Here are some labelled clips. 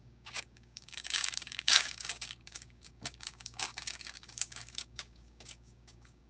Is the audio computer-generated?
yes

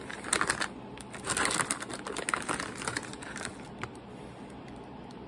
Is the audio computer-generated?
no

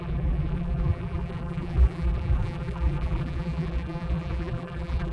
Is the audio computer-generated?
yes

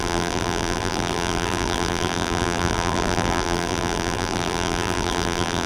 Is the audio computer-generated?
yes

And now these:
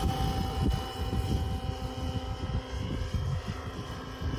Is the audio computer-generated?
no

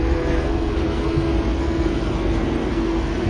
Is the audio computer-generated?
yes